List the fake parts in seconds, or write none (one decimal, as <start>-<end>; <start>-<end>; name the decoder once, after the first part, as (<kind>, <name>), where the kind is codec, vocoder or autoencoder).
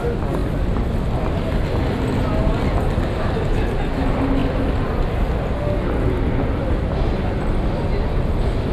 none